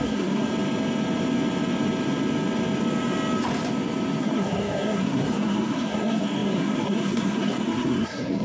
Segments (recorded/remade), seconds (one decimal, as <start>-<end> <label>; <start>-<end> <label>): 0.0-0.5 remade; 0.5-4.2 recorded; 4.2-8.4 remade